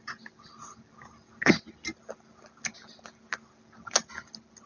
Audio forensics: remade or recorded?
recorded